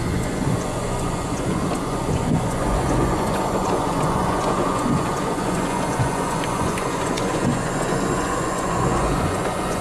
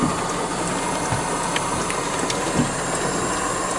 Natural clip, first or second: second